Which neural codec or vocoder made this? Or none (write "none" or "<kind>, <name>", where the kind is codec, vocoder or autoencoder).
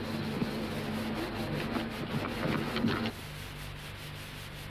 none